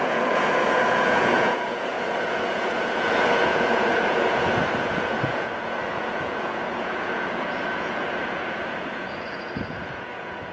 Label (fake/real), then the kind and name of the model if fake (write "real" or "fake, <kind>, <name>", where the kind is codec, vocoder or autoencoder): fake, vocoder, Vocos